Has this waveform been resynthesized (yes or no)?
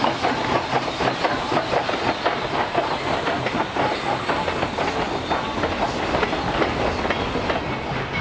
no